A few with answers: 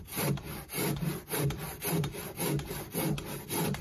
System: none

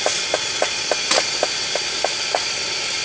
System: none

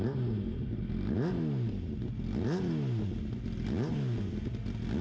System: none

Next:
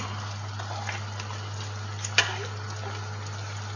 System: none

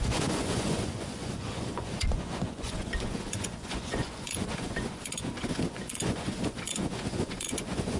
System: vocoder, Vocos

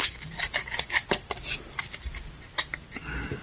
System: none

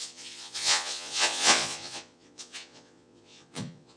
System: vocoder, Vocos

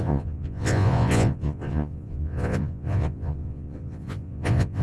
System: vocoder, Vocos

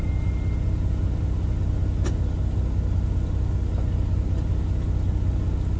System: none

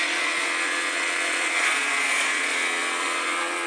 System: vocoder, Vocos